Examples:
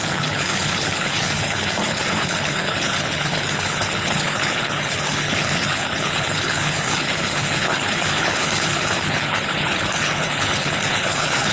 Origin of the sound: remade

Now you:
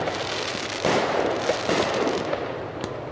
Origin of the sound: recorded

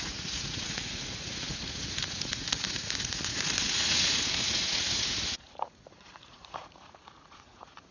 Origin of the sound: remade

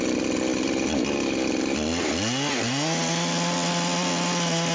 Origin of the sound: recorded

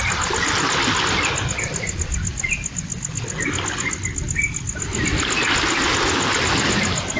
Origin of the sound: recorded